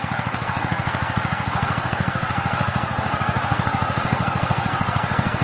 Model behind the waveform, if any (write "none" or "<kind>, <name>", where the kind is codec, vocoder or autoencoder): codec, SNAC